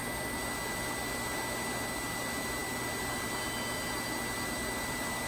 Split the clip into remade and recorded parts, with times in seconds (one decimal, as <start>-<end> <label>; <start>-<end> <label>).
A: 0.0-5.3 recorded